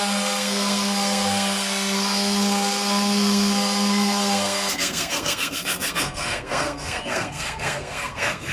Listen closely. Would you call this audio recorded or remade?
remade